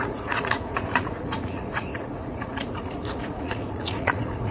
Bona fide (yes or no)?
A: no